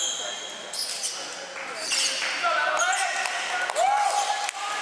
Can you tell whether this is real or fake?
real